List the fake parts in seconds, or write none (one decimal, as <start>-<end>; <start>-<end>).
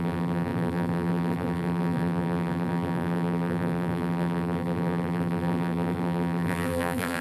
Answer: 0.0-7.2